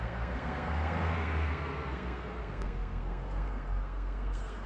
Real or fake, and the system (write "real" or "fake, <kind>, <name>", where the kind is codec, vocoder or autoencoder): fake, codec, SNAC